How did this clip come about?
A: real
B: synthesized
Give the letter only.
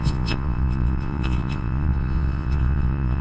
B